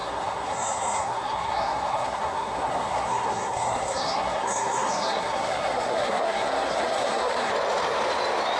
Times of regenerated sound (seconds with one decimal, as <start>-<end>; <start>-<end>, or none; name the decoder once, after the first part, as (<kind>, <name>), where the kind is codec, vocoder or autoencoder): 0.0-7.5 (codec, SNAC)